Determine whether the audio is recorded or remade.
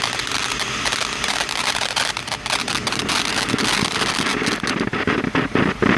recorded